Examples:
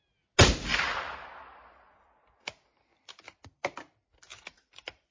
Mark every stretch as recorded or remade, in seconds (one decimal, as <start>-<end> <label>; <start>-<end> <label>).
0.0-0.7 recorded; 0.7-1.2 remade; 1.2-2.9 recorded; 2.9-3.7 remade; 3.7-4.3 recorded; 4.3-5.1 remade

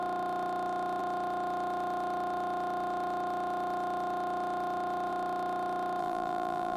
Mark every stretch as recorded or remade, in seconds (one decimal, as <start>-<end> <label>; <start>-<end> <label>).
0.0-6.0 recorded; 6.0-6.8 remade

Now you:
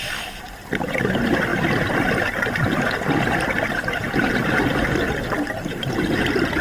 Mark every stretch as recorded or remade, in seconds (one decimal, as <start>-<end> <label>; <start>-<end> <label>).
0.0-6.6 recorded

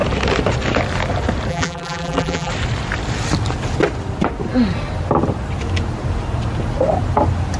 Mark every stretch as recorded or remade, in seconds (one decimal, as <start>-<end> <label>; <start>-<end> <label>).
0.0-1.5 recorded; 1.5-2.5 remade; 2.5-7.6 recorded